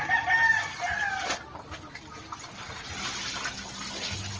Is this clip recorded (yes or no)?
yes